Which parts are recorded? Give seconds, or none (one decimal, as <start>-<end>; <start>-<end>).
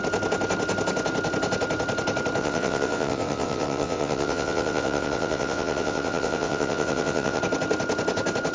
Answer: 0.0-2.4; 7.4-8.5